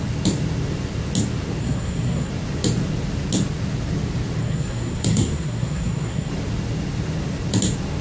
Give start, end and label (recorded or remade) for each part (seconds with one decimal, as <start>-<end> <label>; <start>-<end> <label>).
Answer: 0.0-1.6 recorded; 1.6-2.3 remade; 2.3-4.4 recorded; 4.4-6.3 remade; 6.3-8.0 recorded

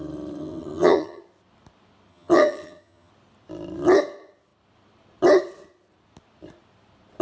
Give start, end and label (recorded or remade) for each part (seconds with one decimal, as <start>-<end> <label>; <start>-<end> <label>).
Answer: 0.0-0.4 recorded; 0.4-1.2 remade; 1.2-2.1 recorded; 2.1-3.1 remade; 3.1-7.2 recorded

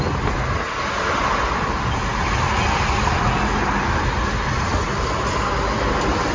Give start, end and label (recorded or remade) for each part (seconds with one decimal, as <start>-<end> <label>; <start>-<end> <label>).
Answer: 0.0-6.3 recorded